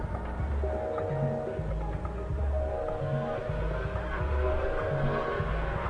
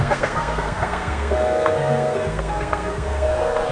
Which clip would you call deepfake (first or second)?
second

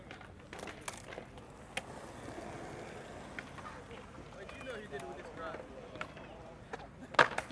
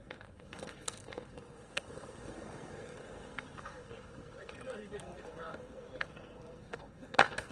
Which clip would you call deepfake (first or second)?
second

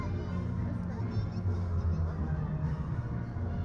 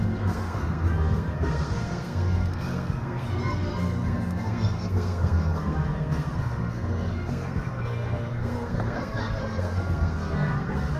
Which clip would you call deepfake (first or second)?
second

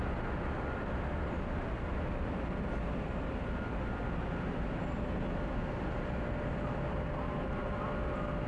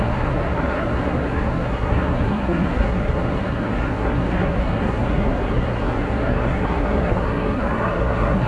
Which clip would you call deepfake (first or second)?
second